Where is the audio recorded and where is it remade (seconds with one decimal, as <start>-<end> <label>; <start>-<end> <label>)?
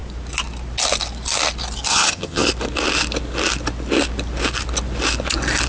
0.0-1.9 recorded; 1.9-2.5 remade; 2.5-5.7 recorded